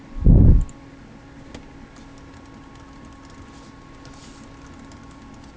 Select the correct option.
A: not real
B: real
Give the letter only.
B